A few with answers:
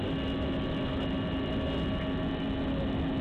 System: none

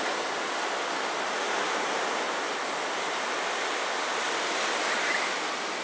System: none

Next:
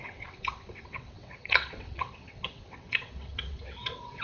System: vocoder, WaveNeXt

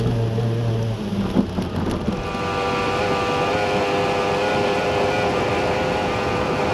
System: none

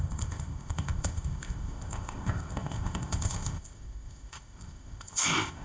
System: codec, ZipCodec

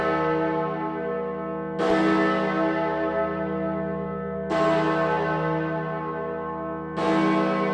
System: none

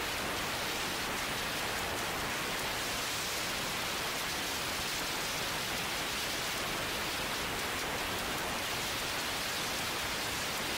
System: none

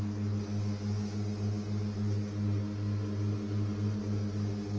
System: none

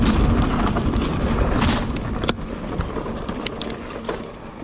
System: none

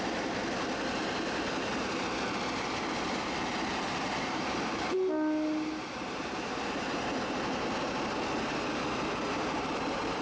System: none